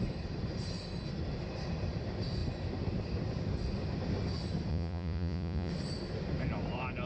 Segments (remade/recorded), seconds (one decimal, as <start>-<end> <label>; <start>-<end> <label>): 0.0-4.7 recorded; 4.7-5.7 remade; 5.7-7.1 recorded

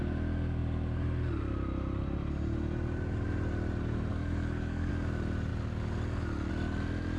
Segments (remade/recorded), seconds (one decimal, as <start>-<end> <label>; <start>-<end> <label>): 0.0-4.1 recorded; 4.1-4.9 remade; 4.9-7.2 recorded

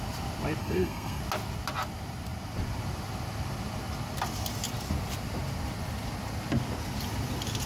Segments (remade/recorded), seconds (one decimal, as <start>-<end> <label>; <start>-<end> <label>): 0.0-0.6 recorded; 0.6-1.2 remade; 1.2-7.7 recorded